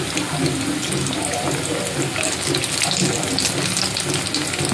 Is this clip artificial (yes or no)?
no